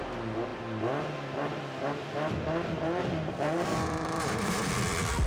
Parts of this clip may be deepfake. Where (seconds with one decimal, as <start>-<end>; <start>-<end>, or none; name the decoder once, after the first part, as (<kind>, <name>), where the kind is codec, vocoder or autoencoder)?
3.0-4.7 (vocoder, BigVGAN v2)